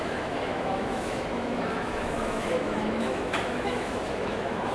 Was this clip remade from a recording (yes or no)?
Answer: yes